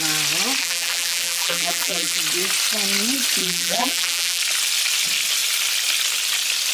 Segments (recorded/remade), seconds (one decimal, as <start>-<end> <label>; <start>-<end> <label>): 0.0-0.6 recorded; 0.6-2.2 remade; 2.2-3.4 recorded; 3.4-4.4 remade; 4.4-6.7 recorded